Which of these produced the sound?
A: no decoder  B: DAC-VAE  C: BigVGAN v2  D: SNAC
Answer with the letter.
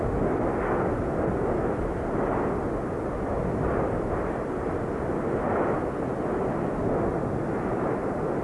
A